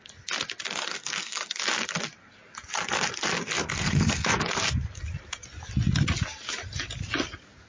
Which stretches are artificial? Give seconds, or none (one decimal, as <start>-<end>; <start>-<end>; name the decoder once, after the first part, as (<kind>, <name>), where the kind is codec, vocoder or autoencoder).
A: 0.9-1.6 (codec, SNAC); 3.6-4.4